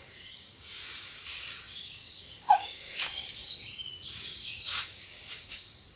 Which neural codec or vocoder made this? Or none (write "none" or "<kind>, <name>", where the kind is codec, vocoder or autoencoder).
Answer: codec, DAC